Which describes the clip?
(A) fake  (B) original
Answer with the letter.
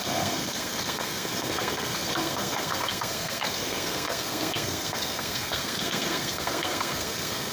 A